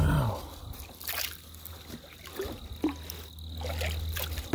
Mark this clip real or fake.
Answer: real